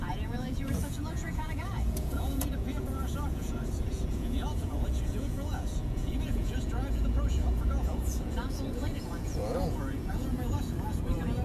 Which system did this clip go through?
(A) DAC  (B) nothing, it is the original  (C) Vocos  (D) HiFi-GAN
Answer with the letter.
C